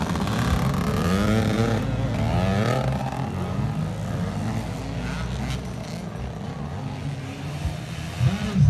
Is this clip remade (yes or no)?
no